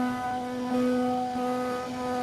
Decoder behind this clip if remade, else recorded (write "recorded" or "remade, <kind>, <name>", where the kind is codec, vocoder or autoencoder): recorded